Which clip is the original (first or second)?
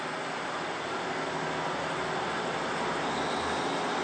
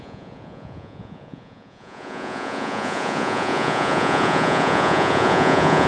first